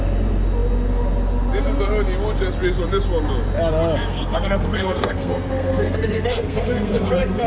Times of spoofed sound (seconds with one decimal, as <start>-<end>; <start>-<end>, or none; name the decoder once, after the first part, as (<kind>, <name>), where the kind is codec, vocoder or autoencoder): 4.1-7.5 (codec, SNAC)